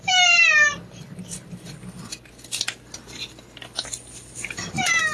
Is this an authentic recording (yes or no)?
no